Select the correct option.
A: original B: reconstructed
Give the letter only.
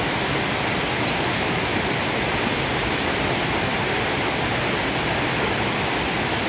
A